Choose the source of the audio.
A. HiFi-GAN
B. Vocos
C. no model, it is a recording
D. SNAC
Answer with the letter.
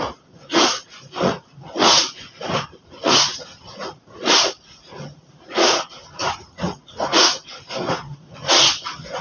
B